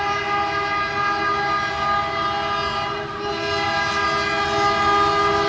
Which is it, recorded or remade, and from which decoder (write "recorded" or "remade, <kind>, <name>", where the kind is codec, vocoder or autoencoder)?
recorded